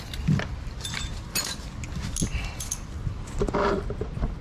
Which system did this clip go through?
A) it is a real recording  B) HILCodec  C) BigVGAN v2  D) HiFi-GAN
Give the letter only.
A